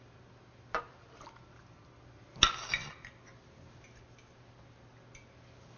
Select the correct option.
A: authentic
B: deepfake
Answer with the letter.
A